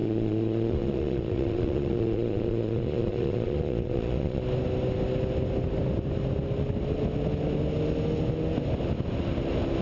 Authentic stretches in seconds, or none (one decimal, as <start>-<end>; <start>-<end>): 4.4-9.8